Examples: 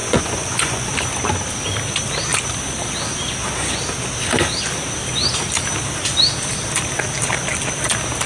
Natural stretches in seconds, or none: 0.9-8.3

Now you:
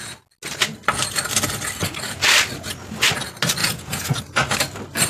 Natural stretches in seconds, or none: 0.0-3.6; 4.2-5.1

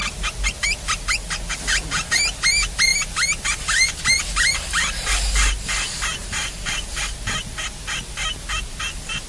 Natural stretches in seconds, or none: 0.0-9.3

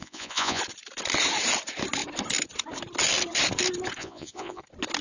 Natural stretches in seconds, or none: 0.6-4.0; 4.6-5.0

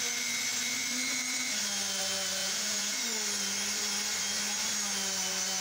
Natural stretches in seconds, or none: 0.0-2.4; 3.0-5.6

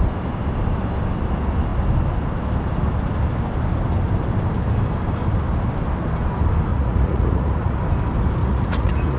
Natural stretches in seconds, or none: 0.0-6.7; 7.8-8.4

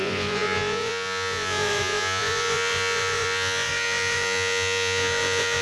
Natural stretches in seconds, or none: none